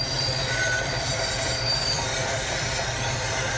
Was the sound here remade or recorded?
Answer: remade